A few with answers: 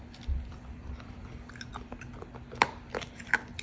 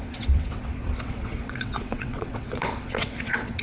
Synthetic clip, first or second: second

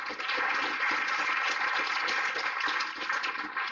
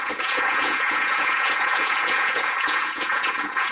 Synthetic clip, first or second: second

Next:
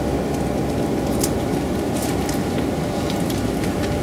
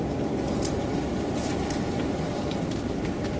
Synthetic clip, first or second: second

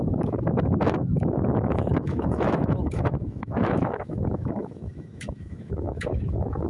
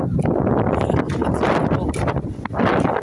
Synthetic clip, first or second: first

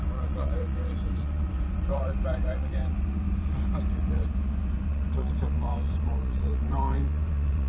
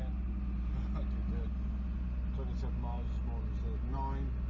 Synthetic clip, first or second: first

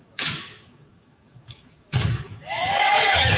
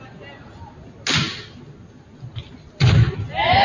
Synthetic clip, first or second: first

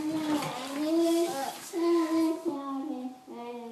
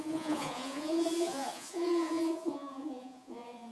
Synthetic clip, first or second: second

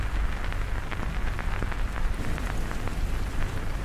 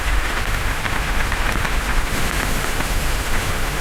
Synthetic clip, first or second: second